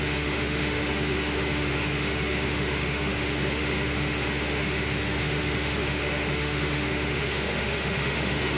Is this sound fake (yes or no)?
yes